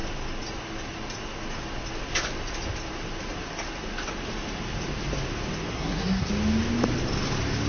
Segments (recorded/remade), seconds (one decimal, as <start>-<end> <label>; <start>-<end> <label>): 0.0-5.7 recorded; 5.7-6.3 remade; 6.3-7.7 recorded